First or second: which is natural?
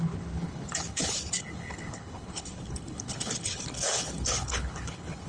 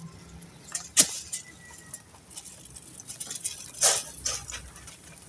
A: second